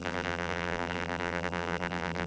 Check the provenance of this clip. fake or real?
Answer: fake